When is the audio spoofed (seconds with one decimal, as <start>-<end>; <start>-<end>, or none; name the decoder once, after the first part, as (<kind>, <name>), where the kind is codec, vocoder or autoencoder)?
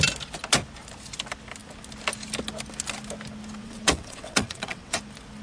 3.6-5.0 (vocoder, WaveNeXt)